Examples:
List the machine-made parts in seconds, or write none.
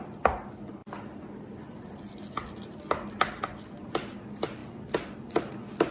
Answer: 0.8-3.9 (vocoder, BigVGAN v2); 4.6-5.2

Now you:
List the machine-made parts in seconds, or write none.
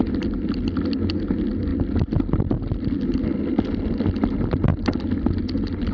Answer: none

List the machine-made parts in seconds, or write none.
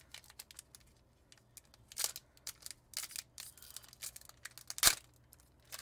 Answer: none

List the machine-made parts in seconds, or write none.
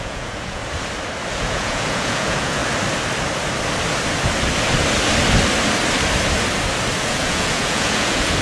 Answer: 0.0-0.6 (vocoder, Vocos); 1.3-2.6; 7.0-8.4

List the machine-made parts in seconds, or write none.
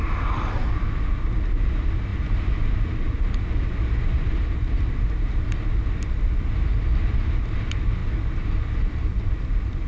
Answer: none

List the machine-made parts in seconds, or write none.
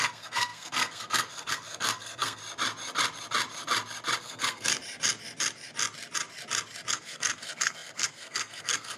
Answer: 0.0-2.4 (codec, SNAC); 4.2-4.7; 6.9-9.0